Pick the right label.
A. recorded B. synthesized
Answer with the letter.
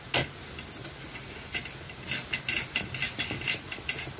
A